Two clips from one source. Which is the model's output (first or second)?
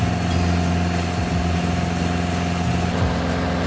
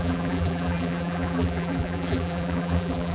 second